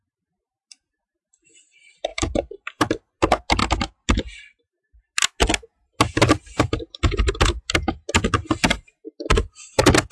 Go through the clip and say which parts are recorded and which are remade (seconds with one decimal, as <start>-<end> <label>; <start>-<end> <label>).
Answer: 0.0-2.1 recorded; 2.1-2.9 remade; 2.9-6.4 recorded; 6.4-7.0 remade; 7.0-10.1 recorded